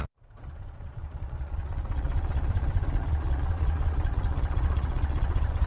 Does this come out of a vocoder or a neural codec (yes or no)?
yes